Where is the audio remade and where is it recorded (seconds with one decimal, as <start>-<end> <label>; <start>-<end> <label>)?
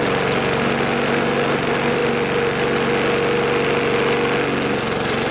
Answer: 0.0-5.3 recorded